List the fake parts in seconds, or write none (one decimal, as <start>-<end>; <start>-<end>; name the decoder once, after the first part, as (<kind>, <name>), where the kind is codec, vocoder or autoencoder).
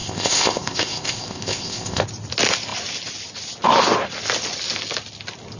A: 0.0-2.0 (codec, ZipCodec)